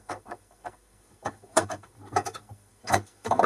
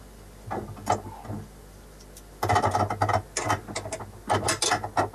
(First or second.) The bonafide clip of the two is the second